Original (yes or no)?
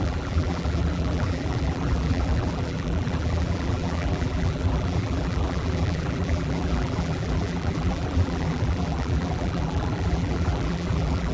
no